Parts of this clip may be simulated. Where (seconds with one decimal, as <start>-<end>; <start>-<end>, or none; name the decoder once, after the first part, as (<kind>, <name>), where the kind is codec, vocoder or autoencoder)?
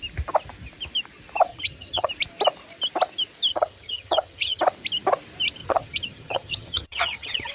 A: 1.5-2.1 (vocoder, HiFi-GAN); 3.5-4.6; 5.6-7.5